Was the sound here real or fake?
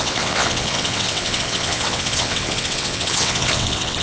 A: fake